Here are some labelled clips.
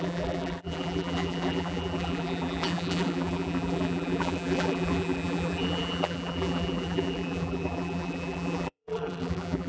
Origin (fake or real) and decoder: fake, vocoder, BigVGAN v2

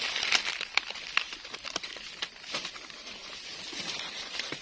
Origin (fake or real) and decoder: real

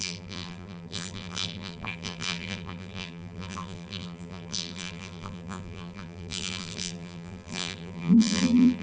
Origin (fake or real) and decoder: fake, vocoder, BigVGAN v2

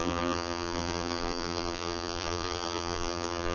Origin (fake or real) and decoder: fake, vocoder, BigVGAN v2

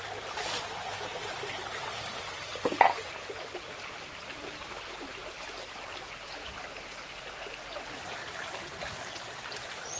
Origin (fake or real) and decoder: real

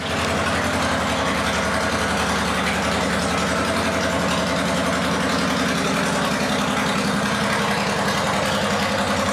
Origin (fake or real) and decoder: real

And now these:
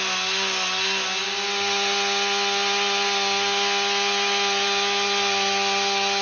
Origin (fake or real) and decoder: real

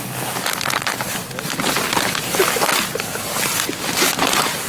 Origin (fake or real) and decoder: real